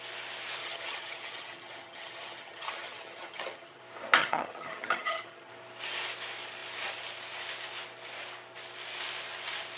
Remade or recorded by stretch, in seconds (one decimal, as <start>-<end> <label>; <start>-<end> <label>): 0.0-0.6 recorded; 0.6-3.8 remade; 3.8-4.2 recorded; 4.2-5.5 remade; 5.5-9.8 recorded